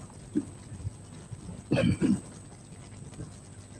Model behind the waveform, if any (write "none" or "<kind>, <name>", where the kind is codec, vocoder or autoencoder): none